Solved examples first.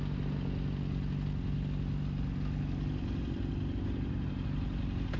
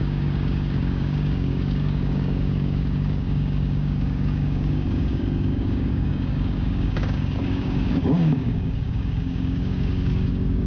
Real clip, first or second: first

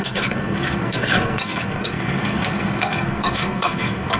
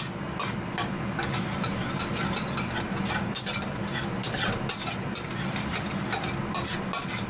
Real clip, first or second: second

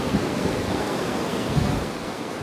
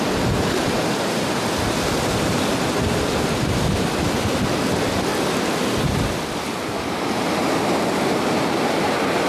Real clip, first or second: second